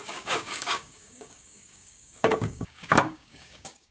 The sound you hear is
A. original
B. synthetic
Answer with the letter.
B